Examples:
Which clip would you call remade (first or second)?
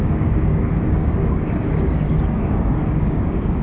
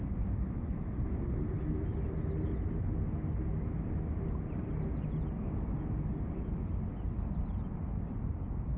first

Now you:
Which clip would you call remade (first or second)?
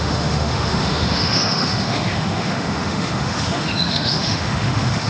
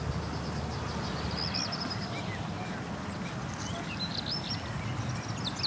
first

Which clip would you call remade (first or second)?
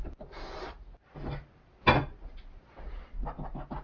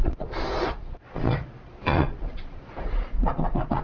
second